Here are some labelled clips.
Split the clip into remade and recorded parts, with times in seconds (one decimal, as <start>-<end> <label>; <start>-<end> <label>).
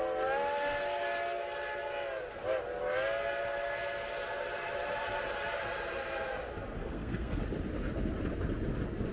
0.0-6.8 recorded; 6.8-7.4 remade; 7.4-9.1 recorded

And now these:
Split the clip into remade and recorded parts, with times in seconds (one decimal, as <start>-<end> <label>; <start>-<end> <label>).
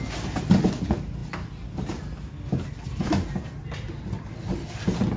0.0-5.2 recorded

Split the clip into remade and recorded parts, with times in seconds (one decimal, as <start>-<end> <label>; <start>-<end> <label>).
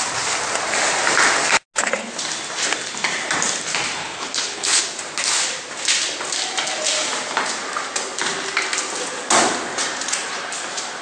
0.0-4.0 recorded; 4.0-4.8 remade; 4.8-11.0 recorded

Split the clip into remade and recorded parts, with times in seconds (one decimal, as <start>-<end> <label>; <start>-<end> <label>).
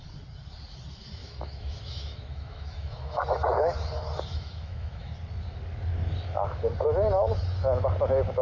0.0-1.2 recorded; 1.2-3.2 remade; 3.2-4.3 recorded; 4.3-5.1 remade; 5.1-8.4 recorded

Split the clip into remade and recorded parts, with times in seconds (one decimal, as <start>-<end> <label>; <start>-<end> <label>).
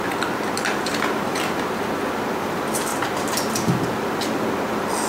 0.0-0.9 recorded; 0.9-1.8 remade; 1.8-5.1 recorded